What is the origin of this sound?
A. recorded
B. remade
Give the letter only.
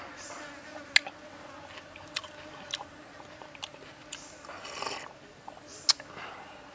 A